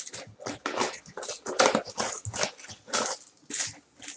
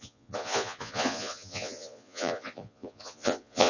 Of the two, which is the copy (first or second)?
second